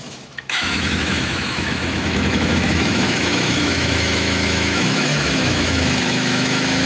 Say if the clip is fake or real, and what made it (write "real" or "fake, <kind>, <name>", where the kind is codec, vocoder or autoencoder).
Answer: fake, autoencoder, DAC-VAE